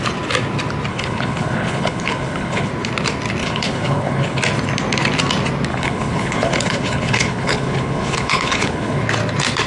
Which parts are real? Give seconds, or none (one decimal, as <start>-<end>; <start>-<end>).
0.0-0.9; 2.7-3.4; 4.4-5.7; 9.0-9.7